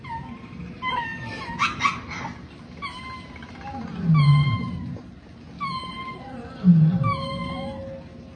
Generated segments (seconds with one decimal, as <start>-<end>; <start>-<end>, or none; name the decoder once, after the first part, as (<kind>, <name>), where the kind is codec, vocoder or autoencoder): none